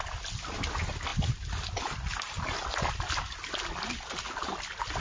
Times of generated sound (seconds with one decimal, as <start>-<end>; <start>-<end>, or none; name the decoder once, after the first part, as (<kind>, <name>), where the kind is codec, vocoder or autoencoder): none